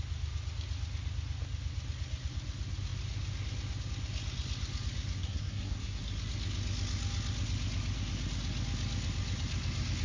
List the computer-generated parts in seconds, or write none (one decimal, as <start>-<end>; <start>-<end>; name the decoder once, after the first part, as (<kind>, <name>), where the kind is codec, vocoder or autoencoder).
5.2-6.0 (codec, SNAC)